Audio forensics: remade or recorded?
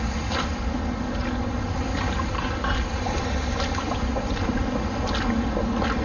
recorded